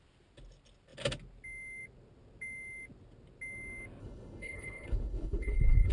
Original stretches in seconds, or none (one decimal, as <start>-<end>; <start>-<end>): 0.0-4.0